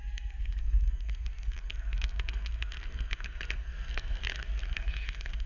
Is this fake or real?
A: fake